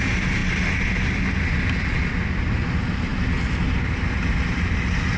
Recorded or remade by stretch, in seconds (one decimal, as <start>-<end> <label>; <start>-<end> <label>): 0.0-5.2 recorded